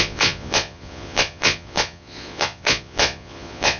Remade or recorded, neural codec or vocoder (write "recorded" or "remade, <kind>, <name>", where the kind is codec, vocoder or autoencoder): remade, vocoder, Vocos